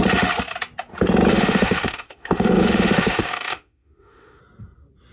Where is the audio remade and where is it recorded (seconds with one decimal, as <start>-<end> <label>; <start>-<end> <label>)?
0.0-1.3 recorded; 1.3-4.4 remade; 4.4-5.1 recorded